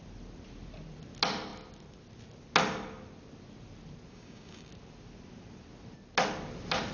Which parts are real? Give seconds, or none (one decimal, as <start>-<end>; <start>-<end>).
0.0-4.1; 4.7-6.9